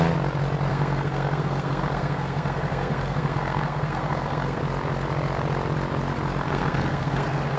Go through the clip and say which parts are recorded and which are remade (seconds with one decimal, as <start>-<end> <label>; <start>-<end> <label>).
0.0-0.7 recorded; 0.7-4.6 remade; 4.6-6.4 recorded; 6.4-7.6 remade